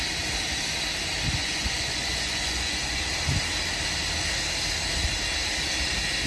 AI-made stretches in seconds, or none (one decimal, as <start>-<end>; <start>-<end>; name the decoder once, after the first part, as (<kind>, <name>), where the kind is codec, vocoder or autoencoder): 1.4-3.0 (vocoder, Vocos)